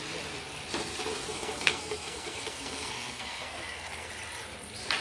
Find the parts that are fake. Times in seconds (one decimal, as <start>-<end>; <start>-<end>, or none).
1.1-4.1